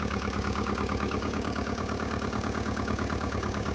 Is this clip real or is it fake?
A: fake